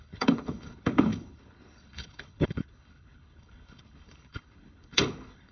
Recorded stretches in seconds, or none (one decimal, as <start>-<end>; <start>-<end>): none